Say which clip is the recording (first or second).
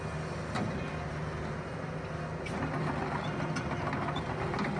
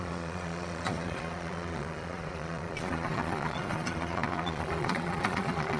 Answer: first